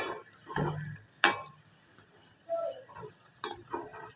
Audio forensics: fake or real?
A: real